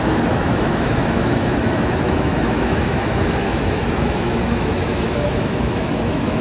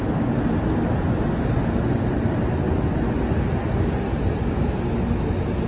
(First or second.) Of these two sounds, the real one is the second